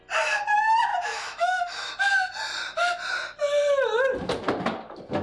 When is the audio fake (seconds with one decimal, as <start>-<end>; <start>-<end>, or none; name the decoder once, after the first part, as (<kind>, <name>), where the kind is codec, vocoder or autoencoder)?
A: 0.9-1.9 (autoencoder, DAC-VAE)